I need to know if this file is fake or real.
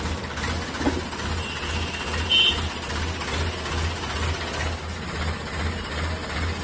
real